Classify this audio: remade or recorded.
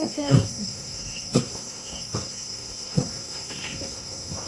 remade